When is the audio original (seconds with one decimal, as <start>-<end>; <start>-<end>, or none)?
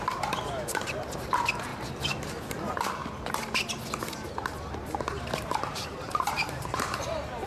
1.7-2.5; 3.0-4.7